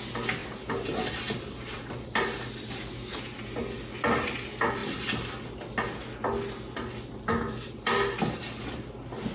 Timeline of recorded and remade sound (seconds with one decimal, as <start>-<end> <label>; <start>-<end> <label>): 0.0-0.4 recorded; 0.4-1.9 remade; 1.9-9.3 recorded